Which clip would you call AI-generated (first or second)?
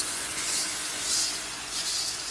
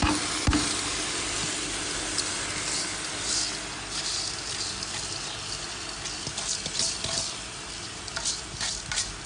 first